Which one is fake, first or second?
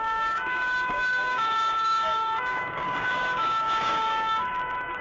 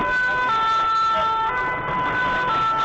first